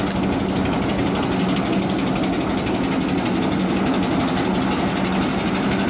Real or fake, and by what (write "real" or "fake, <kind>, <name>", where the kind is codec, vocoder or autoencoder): real